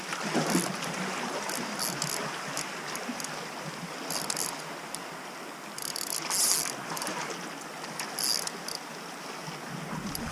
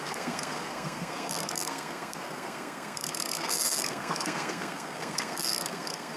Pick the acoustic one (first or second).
first